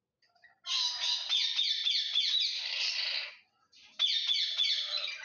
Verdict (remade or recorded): recorded